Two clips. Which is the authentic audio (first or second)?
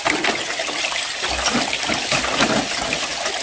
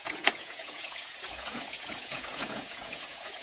first